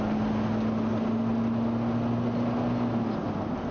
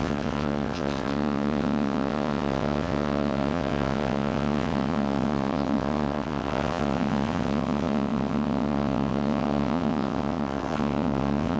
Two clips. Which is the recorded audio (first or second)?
first